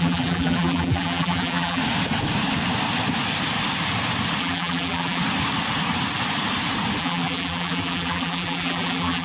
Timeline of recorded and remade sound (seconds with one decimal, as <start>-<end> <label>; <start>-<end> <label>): 0.0-1.8 remade; 1.8-4.4 recorded; 4.4-5.2 remade; 5.2-7.0 recorded; 7.0-9.2 remade